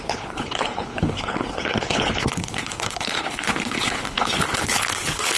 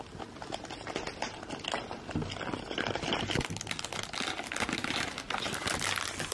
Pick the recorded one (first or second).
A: second